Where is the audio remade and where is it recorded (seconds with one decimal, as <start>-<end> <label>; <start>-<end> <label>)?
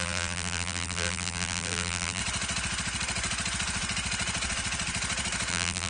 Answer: 0.0-2.2 remade; 2.2-5.5 recorded; 5.5-5.9 remade